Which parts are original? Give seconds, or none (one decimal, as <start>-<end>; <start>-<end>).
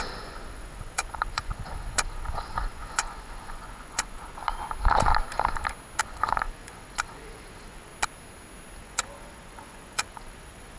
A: 4.4-6.0; 7.9-8.8